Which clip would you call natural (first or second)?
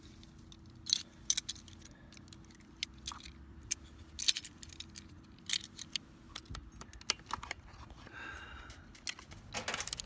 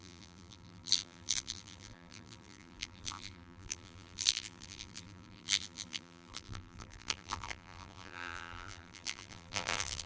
first